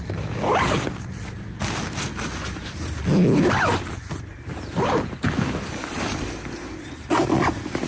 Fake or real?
real